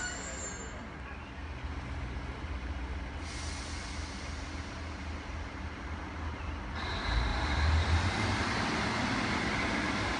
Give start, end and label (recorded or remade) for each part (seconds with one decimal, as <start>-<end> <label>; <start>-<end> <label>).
0.0-7.3 recorded; 7.3-9.4 remade; 9.4-10.2 recorded